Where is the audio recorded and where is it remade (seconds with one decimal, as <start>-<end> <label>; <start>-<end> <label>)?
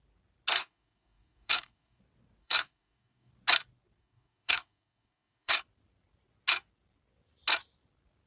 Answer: 0.0-0.6 recorded; 0.6-2.0 remade; 2.0-2.4 recorded; 2.4-3.3 remade; 3.3-4.0 recorded; 4.0-5.6 remade; 5.6-8.3 recorded